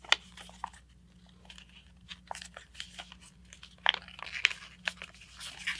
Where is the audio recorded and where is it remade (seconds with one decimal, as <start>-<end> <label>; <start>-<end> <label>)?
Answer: 0.0-5.8 recorded

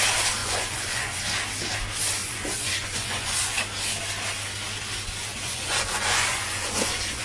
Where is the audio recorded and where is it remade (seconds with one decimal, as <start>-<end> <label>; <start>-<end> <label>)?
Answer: 0.0-0.4 recorded; 0.4-1.2 remade; 1.2-2.2 recorded; 2.2-3.6 remade; 3.6-5.3 recorded; 5.3-7.2 remade

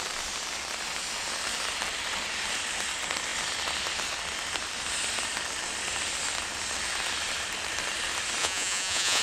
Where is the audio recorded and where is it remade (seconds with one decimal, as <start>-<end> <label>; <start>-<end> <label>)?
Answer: 0.0-8.4 recorded; 8.4-9.2 remade

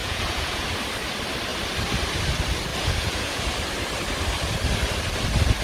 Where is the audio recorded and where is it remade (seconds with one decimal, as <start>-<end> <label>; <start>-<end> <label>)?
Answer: 0.0-0.8 remade; 0.8-2.7 recorded; 2.7-3.4 remade; 3.4-5.6 recorded

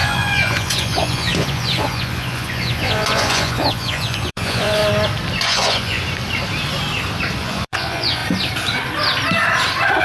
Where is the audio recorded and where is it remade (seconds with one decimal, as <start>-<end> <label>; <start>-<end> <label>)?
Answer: 0.0-4.8 remade; 4.8-5.4 recorded; 5.4-6.0 remade; 6.0-7.4 recorded; 7.4-8.2 remade; 8.2-10.0 recorded

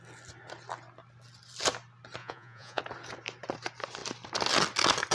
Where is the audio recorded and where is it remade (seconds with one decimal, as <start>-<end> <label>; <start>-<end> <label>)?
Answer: 0.0-2.2 recorded; 2.2-2.8 remade; 2.8-5.1 recorded

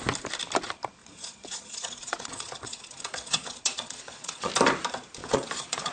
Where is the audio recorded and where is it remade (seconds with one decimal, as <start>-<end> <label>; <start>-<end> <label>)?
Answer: 0.0-1.0 recorded; 1.0-4.5 remade; 4.5-5.2 recorded; 5.2-5.9 remade

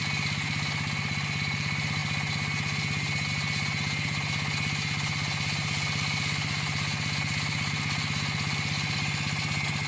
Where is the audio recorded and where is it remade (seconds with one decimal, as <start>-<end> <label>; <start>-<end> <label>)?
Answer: 0.0-9.9 recorded